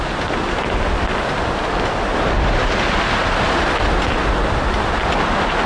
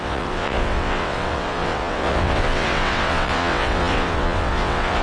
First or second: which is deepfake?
second